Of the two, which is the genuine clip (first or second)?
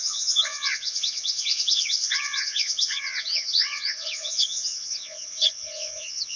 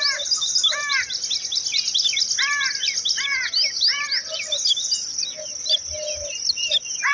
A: second